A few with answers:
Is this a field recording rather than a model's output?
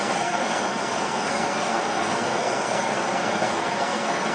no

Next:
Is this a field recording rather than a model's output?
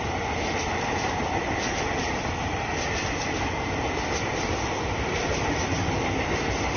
yes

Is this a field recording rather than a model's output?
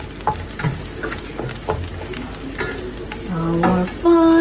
yes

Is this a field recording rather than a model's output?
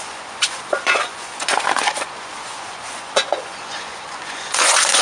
no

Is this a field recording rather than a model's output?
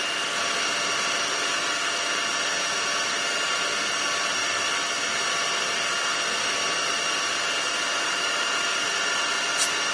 yes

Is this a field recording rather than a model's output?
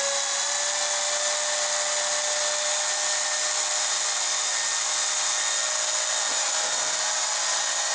yes